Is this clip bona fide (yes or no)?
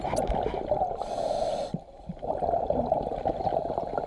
yes